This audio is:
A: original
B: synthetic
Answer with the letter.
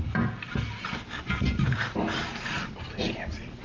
A